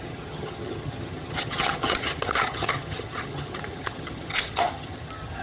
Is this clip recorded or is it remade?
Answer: remade